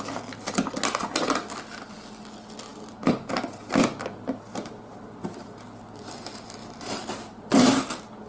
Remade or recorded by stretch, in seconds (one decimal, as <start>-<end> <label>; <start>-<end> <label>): 0.0-6.6 recorded; 6.6-7.1 remade; 7.1-8.3 recorded

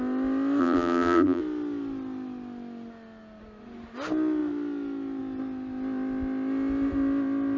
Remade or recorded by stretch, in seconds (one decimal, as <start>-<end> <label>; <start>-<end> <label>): 0.0-0.6 recorded; 0.6-1.4 remade; 1.4-7.6 recorded

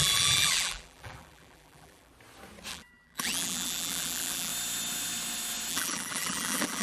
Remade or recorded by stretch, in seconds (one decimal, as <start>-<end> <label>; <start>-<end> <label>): 0.0-2.1 remade; 2.1-2.7 recorded; 2.7-4.5 remade; 4.5-5.7 recorded; 5.7-6.8 remade